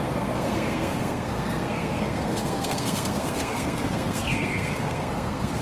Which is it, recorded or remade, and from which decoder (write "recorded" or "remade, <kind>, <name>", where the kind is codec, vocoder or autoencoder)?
remade, codec, SNAC